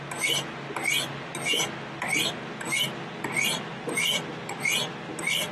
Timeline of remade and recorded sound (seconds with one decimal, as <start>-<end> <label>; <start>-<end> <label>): 0.0-5.5 recorded